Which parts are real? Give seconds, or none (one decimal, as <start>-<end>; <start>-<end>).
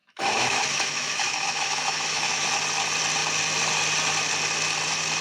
2.5-5.2